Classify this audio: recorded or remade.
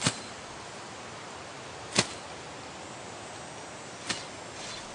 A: recorded